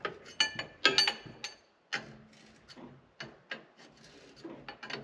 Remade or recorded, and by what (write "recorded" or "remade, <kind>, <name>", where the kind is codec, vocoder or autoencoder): recorded